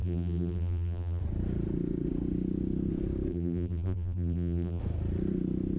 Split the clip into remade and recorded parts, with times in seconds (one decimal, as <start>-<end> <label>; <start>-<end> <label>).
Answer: 0.0-1.2 remade; 1.2-3.3 recorded; 3.3-4.8 remade; 4.8-5.8 recorded

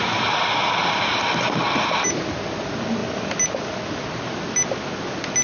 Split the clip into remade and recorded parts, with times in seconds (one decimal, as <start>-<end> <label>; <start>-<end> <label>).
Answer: 0.0-5.4 recorded